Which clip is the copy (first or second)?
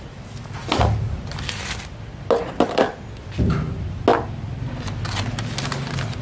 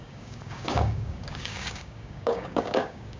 second